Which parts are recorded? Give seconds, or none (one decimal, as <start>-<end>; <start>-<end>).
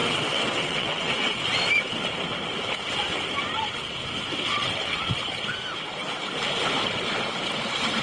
1.4-4.5; 5.2-8.0